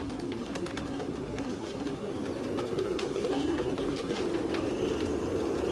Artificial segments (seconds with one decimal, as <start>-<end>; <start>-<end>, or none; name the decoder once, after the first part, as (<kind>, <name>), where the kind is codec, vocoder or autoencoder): 0.0-2.1 (codec, SNAC); 2.6-4.2